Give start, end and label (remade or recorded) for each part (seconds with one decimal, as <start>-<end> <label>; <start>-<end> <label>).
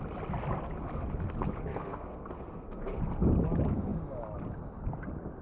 0.0-1.7 recorded; 1.7-3.0 remade; 3.0-5.4 recorded